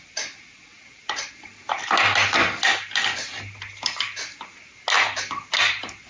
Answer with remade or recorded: recorded